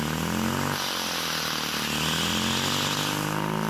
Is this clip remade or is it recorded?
recorded